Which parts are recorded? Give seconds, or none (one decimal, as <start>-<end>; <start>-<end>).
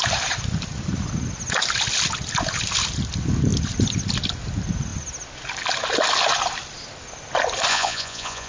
0.0-7.7